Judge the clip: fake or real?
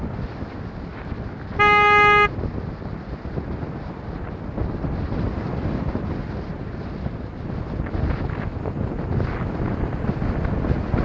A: real